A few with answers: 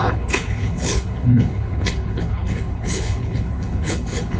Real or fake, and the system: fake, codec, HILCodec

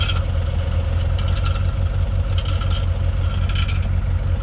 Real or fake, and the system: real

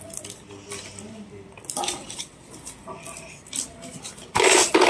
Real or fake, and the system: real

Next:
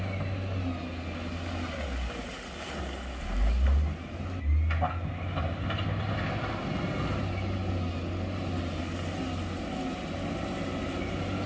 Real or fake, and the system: real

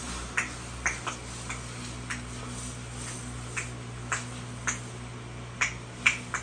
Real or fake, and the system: real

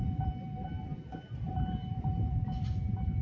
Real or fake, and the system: fake, vocoder, BigVGAN v2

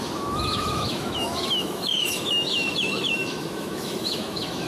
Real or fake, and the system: fake, autoencoder, DAC-VAE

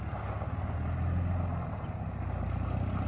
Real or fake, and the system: real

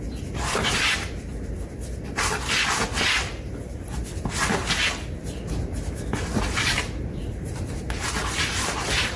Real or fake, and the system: real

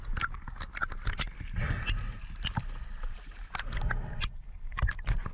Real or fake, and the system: real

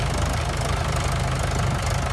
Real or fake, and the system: real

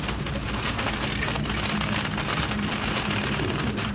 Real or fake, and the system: fake, vocoder, BigVGAN v2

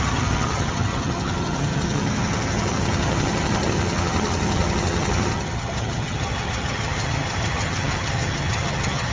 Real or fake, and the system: fake, vocoder, HiFi-GAN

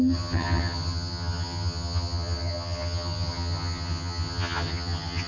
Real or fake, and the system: fake, vocoder, HiFi-GAN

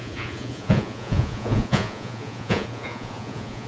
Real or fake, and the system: fake, vocoder, Vocos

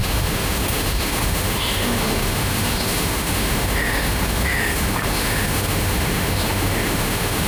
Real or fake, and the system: fake, autoencoder, DAC-VAE